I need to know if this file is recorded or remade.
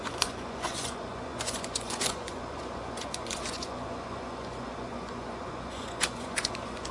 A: remade